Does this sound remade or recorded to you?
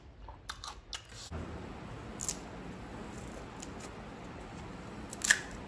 recorded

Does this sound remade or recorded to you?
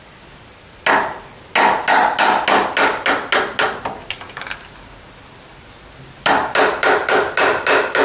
recorded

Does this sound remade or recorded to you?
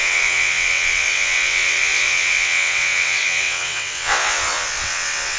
remade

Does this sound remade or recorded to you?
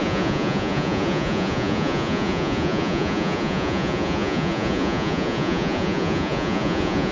remade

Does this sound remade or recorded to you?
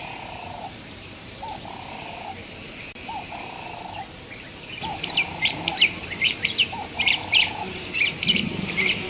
remade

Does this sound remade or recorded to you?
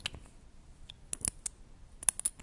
recorded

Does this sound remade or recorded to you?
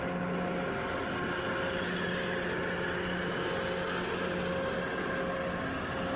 recorded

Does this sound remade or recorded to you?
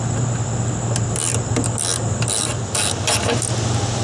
recorded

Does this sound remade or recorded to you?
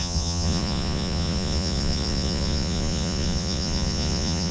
remade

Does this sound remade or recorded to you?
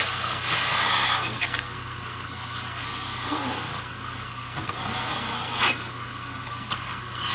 remade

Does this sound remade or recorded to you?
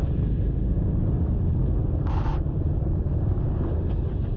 recorded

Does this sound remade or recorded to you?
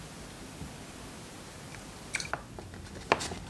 remade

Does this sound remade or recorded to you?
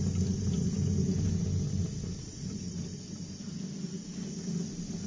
recorded